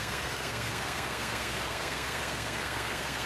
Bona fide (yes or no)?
no